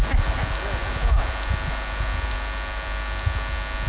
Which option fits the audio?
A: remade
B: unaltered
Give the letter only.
B